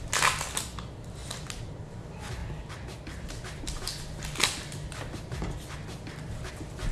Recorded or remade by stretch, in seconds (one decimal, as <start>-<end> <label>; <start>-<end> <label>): 0.0-6.9 recorded

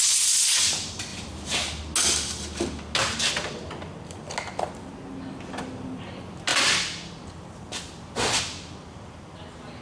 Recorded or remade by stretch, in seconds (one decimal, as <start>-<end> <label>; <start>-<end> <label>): 0.0-9.8 recorded

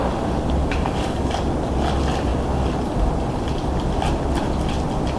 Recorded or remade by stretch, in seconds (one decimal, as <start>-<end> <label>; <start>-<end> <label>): 0.0-0.6 recorded; 0.6-1.3 remade; 1.3-5.2 recorded

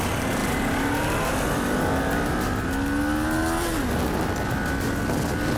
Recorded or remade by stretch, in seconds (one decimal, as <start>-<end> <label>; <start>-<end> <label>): 0.0-5.6 recorded

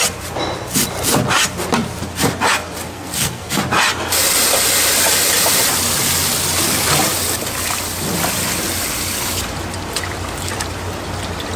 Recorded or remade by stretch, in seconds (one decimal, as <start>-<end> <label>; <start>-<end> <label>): 0.0-2.9 recorded; 2.9-3.6 remade; 3.6-11.6 recorded

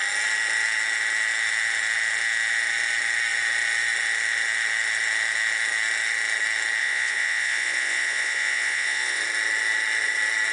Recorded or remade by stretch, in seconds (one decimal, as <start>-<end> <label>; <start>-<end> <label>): 0.0-6.8 recorded; 6.8-9.2 remade; 9.2-10.5 recorded

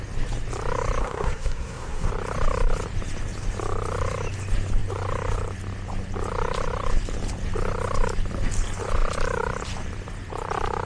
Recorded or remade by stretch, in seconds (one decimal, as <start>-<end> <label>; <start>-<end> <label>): 0.0-1.0 recorded; 1.0-2.1 remade; 2.1-10.9 recorded

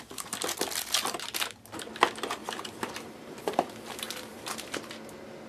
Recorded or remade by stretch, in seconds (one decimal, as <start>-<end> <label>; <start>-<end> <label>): 0.0-2.4 recorded; 2.4-4.9 remade; 4.9-5.5 recorded